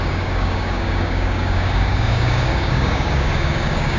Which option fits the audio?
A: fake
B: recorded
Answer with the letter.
A